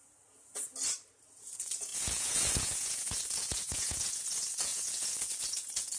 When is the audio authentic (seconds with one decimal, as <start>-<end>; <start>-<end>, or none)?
0.0-1.4